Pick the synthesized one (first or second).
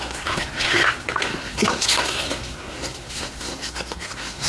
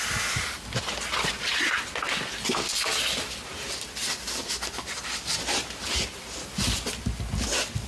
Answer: first